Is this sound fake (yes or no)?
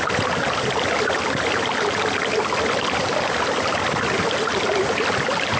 no